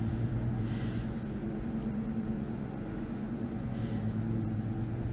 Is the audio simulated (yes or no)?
yes